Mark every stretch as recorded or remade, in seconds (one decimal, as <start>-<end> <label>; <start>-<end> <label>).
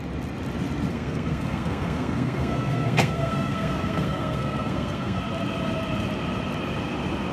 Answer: 0.0-0.9 recorded; 0.9-5.2 remade; 5.2-7.3 recorded